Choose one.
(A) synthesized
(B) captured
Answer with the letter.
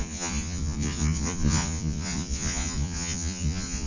A